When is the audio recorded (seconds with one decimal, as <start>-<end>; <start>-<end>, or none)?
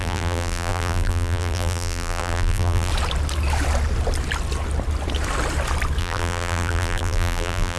2.9-6.0